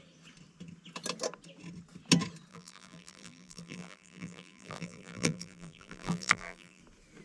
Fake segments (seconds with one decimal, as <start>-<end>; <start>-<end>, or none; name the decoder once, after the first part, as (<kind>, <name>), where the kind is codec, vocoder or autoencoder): 2.5-6.8 (vocoder, BigVGAN v2)